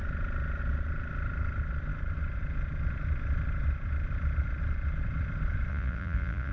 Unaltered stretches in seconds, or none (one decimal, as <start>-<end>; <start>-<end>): 0.0-5.7